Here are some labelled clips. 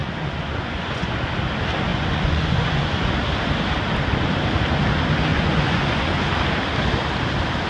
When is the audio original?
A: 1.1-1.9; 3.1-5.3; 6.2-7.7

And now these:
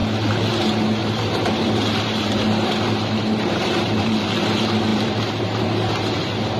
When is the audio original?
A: 0.0-0.5

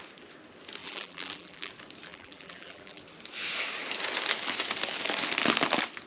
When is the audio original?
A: 0.0-0.8; 1.7-2.1; 3.0-6.1

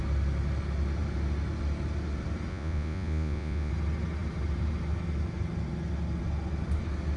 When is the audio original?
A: 0.0-2.5; 3.7-7.2

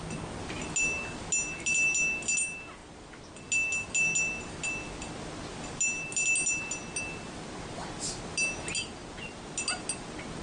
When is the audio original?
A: 0.0-10.4